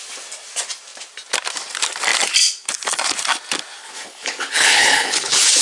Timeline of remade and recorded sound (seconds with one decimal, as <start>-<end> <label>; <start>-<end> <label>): 0.0-3.8 recorded; 3.8-5.6 remade